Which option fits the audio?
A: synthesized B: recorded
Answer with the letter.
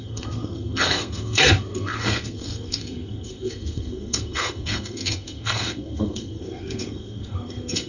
A